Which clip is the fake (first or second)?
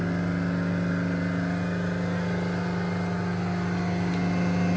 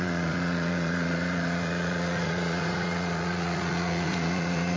second